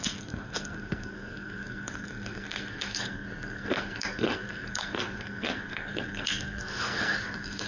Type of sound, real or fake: fake